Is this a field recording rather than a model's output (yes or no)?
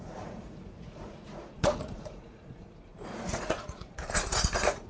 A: no